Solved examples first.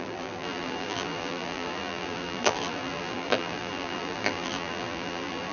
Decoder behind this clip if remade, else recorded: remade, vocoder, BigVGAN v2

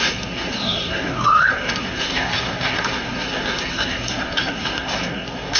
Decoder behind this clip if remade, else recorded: remade, codec, SNAC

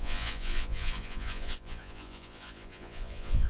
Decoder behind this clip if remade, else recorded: remade, vocoder, Vocos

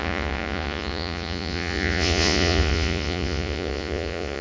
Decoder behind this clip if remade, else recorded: remade, vocoder, Vocos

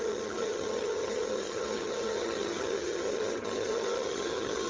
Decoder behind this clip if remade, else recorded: remade, vocoder, HiFi-GAN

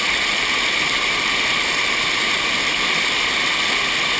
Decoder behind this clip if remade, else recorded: recorded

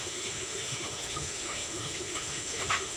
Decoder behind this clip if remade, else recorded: remade, autoencoder, DAC-VAE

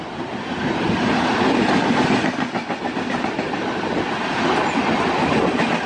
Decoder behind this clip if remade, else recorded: recorded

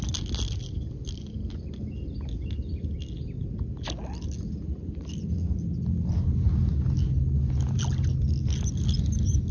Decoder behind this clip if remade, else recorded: recorded